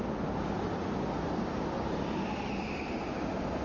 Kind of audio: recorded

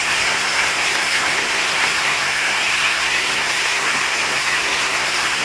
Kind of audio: remade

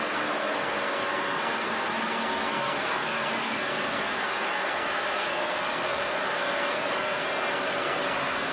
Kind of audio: remade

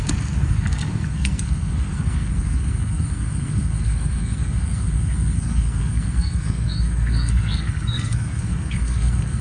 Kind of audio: remade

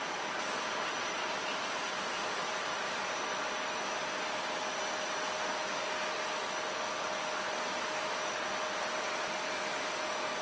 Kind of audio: recorded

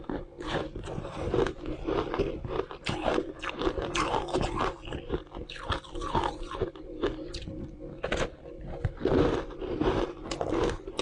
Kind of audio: recorded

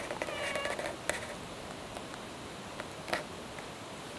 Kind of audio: recorded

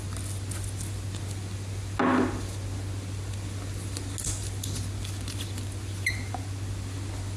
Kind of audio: recorded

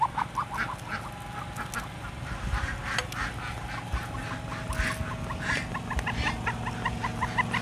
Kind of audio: recorded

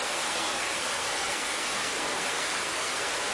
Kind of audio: remade